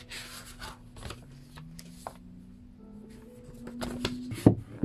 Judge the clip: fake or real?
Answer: real